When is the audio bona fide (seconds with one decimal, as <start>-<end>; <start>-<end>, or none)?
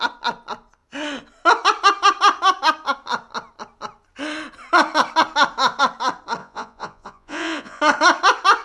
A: 0.0-6.4; 7.8-8.6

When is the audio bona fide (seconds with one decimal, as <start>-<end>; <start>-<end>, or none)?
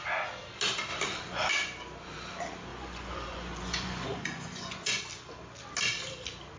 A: 0.0-2.7; 5.0-6.6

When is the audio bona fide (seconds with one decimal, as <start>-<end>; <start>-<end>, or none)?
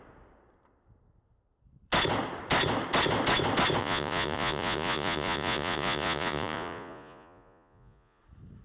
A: 0.0-3.8; 8.2-8.6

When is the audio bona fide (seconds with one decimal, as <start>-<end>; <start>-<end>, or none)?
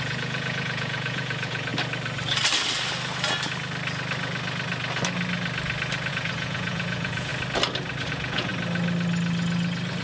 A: 1.7-6.1; 7.3-8.1; 8.5-10.0